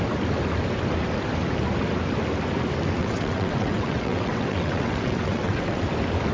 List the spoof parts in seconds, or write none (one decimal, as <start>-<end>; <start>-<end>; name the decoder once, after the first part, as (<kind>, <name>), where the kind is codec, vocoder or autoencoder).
3.0-5.8 (vocoder, WaveNeXt)